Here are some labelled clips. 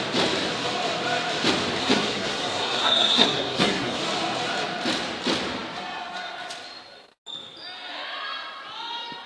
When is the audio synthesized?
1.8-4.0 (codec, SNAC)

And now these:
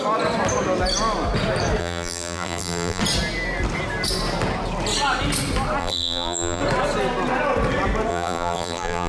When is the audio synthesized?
1.8-3.0 (vocoder, BigVGAN v2); 5.8-6.6; 8.1-9.1